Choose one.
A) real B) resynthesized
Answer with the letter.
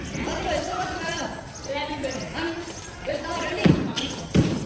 A